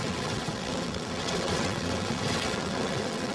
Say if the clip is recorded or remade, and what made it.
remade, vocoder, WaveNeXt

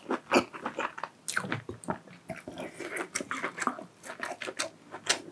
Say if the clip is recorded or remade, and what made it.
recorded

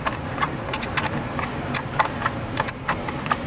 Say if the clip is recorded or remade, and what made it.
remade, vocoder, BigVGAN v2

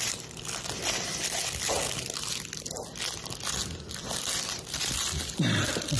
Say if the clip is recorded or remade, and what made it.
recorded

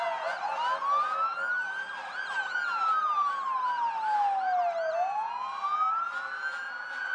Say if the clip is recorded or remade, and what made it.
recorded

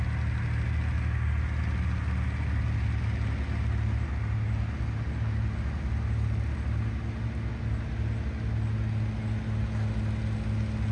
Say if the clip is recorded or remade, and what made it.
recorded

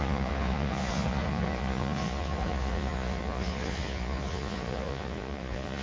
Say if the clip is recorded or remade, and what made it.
remade, vocoder, Vocos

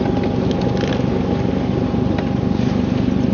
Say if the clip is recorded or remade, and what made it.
recorded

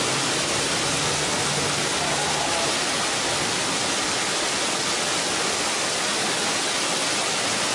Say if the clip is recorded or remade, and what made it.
recorded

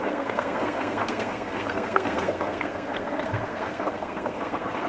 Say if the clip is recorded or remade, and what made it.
remade, codec, SNAC